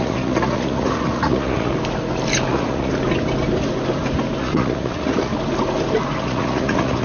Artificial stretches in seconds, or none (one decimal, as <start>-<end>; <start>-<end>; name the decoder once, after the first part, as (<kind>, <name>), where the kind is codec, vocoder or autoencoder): 0.0-1.7 (vocoder, Vocos); 2.5-2.9; 4.4-5.3; 6.2-7.0